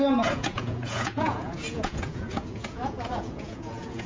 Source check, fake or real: fake